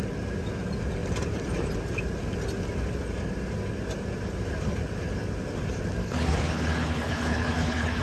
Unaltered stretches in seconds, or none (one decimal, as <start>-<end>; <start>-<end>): 0.0-6.0

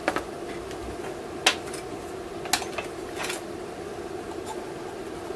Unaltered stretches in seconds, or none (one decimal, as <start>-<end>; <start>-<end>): 0.0-5.4

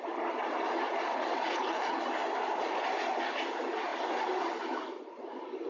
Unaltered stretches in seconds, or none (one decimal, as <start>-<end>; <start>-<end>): 0.0-1.5; 2.0-5.7

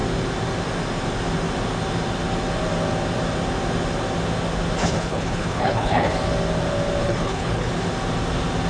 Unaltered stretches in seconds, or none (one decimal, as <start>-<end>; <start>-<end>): 0.0-4.8; 6.1-7.0; 7.7-8.7